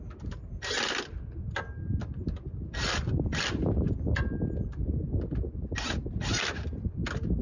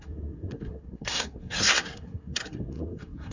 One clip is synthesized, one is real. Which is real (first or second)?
first